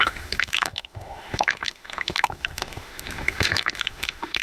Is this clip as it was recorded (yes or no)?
no